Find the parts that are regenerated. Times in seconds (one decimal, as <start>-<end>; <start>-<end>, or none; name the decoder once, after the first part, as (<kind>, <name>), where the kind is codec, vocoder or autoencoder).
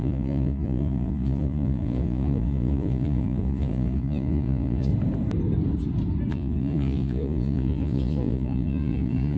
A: 0.0-4.9 (vocoder, Vocos); 6.3-9.4